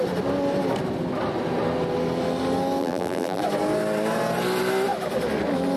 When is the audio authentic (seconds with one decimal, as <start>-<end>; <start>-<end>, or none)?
0.0-2.8; 3.4-5.8